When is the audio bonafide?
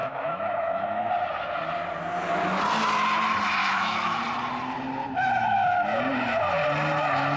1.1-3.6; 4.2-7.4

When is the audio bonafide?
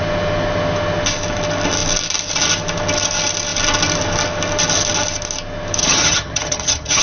0.0-5.8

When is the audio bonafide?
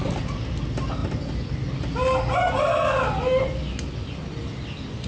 0.0-5.1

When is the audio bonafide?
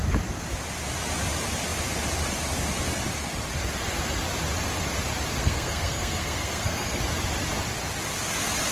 0.0-5.4; 7.0-8.7